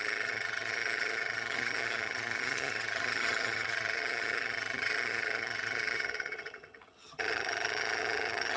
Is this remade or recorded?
remade